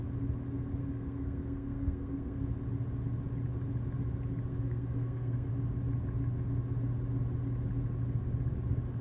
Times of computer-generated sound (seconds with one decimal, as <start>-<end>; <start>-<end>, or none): 0.8-2.4; 4.5-5.5